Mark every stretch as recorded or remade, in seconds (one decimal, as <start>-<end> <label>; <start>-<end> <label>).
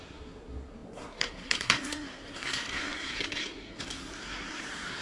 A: 0.0-5.0 remade